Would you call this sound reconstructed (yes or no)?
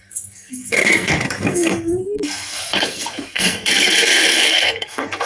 yes